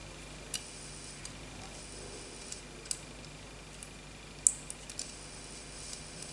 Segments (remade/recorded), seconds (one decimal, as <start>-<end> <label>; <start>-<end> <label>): 0.0-0.6 recorded; 0.6-1.2 remade; 1.2-1.8 recorded; 1.8-2.6 remade; 2.6-5.0 recorded; 5.0-6.3 remade